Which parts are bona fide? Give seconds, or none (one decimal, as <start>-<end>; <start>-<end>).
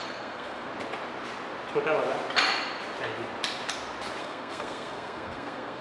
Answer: 0.7-4.2